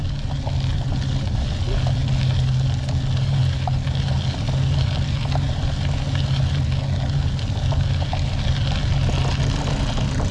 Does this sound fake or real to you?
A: real